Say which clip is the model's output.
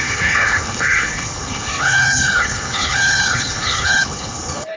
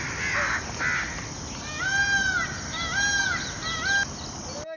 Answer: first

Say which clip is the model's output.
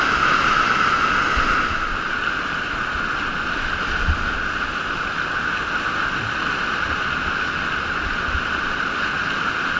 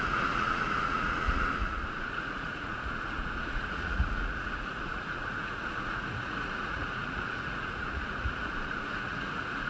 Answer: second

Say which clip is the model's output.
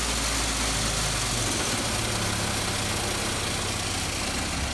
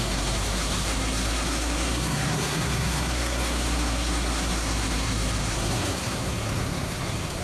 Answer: second